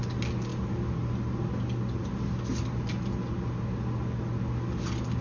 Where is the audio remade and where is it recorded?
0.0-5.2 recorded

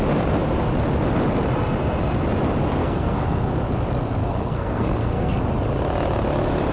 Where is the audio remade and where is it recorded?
0.0-2.8 recorded; 2.8-3.5 remade; 3.5-4.2 recorded; 4.2-5.4 remade; 5.4-6.7 recorded

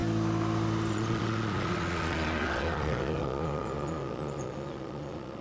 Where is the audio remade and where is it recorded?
0.0-0.9 recorded; 0.9-5.4 remade

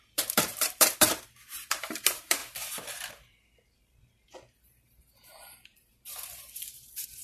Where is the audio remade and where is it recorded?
0.0-2.4 remade; 2.4-3.1 recorded; 3.1-7.2 remade

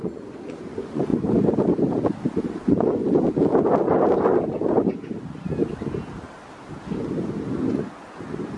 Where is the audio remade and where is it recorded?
0.0-1.1 remade; 1.1-2.6 recorded; 2.6-3.0 remade; 3.0-7.7 recorded; 7.7-8.6 remade